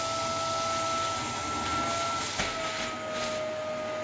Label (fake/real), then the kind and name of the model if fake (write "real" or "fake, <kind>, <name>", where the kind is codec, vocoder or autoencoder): real